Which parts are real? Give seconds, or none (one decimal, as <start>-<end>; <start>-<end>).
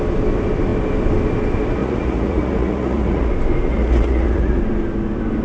0.0-1.8; 3.3-3.7; 4.6-5.4